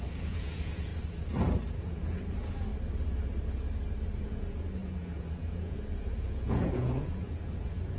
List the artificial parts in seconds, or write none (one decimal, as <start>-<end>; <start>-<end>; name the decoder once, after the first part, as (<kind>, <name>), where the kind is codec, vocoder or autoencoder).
0.0-0.9 (vocoder, Vocos); 1.8-2.7; 4.2-8.0